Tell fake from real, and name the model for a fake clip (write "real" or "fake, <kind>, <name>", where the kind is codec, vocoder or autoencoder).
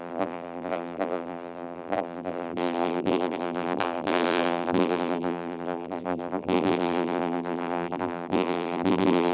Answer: fake, vocoder, BigVGAN v2